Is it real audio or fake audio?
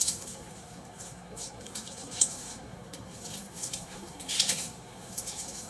fake